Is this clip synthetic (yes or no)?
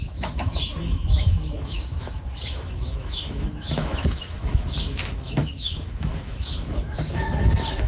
yes